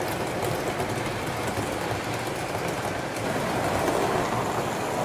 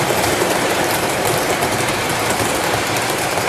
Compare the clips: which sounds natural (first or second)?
first